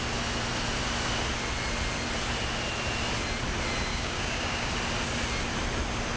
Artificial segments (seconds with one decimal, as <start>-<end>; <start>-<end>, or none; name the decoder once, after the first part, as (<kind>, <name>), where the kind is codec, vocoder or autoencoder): 3.9-4.7 (codec, DAC)